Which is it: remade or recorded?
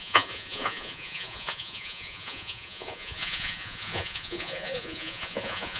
remade